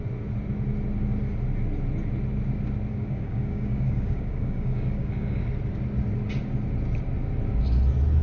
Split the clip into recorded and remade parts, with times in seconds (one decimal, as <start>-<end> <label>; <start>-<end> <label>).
0.0-2.9 recorded; 2.9-5.4 remade; 5.4-8.2 recorded